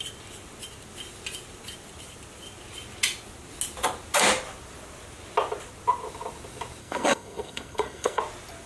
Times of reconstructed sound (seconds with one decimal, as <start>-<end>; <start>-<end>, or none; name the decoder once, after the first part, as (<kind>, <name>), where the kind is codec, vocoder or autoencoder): 6.8-8.2 (codec, SNAC)